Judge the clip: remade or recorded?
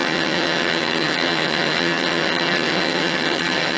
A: remade